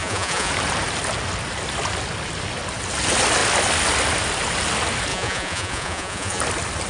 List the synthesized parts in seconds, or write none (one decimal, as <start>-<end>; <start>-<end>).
0.0-0.5; 5.1-6.4